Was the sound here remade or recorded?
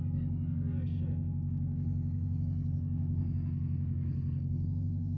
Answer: remade